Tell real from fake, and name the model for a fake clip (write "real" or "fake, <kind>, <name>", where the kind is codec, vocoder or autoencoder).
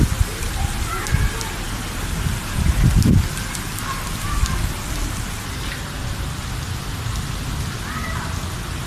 real